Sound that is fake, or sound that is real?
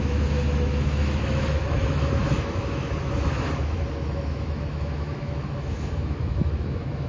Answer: fake